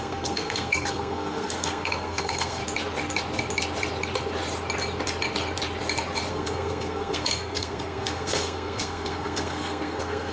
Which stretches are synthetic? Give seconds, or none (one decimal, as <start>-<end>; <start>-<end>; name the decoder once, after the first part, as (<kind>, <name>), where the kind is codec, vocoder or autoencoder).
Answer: 0.0-2.6 (codec, SNAC); 6.3-10.3